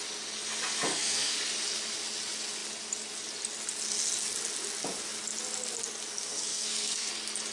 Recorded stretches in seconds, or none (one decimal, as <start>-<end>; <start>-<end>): 0.0-0.9; 1.4-6.3; 7.1-7.5